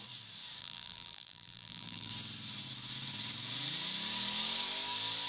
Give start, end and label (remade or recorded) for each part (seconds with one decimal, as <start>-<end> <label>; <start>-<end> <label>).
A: 0.0-0.6 recorded; 0.6-2.1 remade; 2.1-5.3 recorded